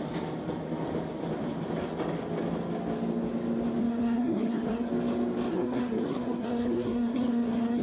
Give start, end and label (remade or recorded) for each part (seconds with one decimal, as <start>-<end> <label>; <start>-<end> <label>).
0.0-3.8 recorded; 3.8-4.9 remade; 4.9-5.5 recorded; 5.5-7.8 remade